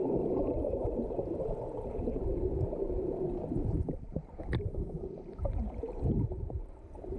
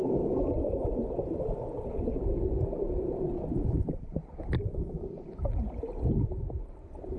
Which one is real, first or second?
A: second